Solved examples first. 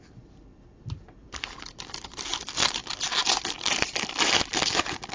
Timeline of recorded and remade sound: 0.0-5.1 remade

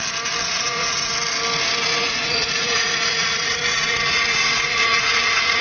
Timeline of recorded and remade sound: 0.0-0.4 recorded; 0.4-1.1 remade; 1.1-1.9 recorded; 1.9-5.6 remade

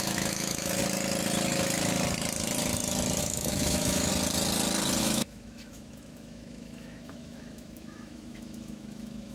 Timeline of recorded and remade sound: 0.0-0.8 remade; 0.8-3.2 recorded; 3.2-4.1 remade; 4.1-5.0 recorded; 5.0-9.3 remade

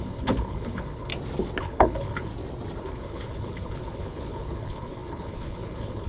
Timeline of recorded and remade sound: 0.0-1.1 remade; 1.1-1.6 recorded; 1.6-2.3 remade; 2.3-2.8 recorded; 2.8-6.1 remade

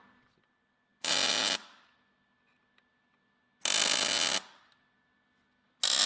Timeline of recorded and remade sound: 0.0-6.1 recorded